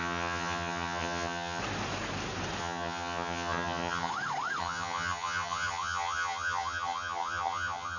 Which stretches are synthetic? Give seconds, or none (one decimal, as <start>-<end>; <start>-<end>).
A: 0.0-1.6; 2.6-4.1; 4.6-8.0